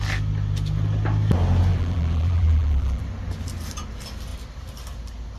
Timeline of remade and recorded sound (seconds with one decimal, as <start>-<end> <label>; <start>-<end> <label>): 0.0-1.7 recorded; 1.7-3.0 remade; 3.0-5.4 recorded